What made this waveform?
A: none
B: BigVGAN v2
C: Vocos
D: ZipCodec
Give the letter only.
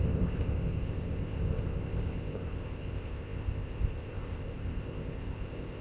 D